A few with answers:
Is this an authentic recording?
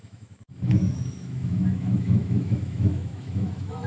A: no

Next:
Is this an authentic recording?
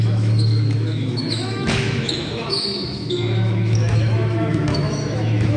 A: no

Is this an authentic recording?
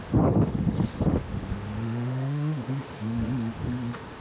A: no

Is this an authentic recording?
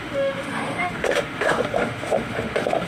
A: no